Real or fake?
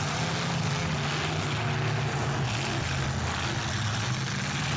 real